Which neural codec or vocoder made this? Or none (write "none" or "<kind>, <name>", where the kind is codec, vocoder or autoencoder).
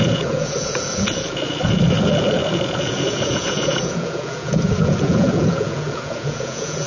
vocoder, Vocos